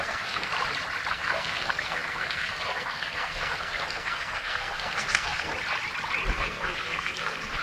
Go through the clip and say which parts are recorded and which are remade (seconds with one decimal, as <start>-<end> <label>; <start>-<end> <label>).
0.0-0.5 remade; 0.5-1.1 recorded; 1.1-5.5 remade; 5.5-6.3 recorded; 6.3-7.6 remade

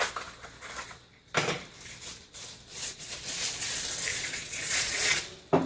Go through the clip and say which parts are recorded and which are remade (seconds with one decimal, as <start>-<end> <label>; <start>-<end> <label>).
0.0-2.7 recorded; 2.7-3.4 remade; 3.4-4.1 recorded; 4.1-5.2 remade; 5.2-5.7 recorded

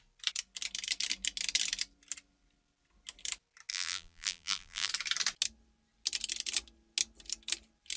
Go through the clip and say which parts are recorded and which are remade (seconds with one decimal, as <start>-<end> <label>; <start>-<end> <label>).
0.0-3.7 recorded; 3.7-4.9 remade; 4.9-8.0 recorded